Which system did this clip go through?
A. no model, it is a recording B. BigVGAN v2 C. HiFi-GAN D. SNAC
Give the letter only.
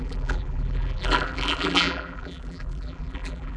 B